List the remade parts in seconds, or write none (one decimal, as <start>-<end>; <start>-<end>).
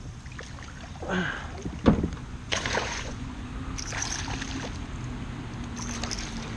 2.2-3.5